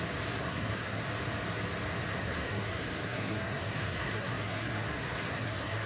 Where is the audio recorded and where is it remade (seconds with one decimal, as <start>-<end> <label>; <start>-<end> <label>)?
0.0-0.4 recorded; 0.4-1.0 remade; 1.0-2.1 recorded; 2.1-5.9 remade